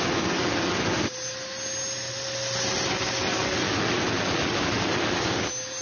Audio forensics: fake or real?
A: real